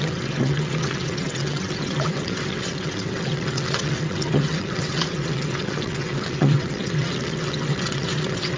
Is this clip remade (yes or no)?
yes